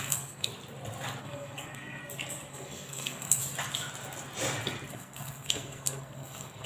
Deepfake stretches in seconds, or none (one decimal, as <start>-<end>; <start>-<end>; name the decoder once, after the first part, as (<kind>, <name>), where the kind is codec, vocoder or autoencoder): 0.0-0.5 (codec, SNAC); 1.2-2.0; 2.5-3.4; 4.9-6.7